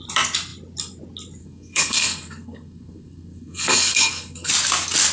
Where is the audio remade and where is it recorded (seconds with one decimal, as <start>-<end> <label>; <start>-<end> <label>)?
0.0-1.4 recorded; 1.4-4.5 remade; 4.5-5.1 recorded